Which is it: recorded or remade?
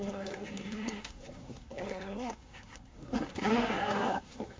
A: remade